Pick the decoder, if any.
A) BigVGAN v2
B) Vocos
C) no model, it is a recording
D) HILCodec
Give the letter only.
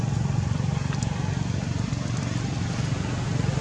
C